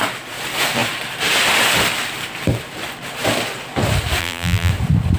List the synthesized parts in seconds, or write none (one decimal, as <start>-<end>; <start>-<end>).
4.2-4.7